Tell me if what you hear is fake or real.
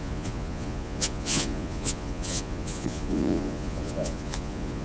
fake